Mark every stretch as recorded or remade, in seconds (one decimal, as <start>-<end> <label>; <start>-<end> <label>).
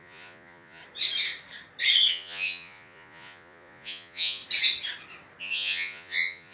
0.0-0.8 remade; 0.8-2.1 recorded; 2.1-4.4 remade; 4.4-5.4 recorded; 5.4-6.5 remade